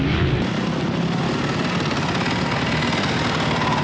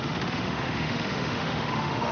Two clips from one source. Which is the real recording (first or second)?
first